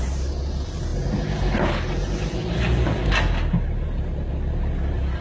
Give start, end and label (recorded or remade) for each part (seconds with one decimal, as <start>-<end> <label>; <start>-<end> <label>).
0.0-5.2 recorded